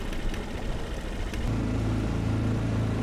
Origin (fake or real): real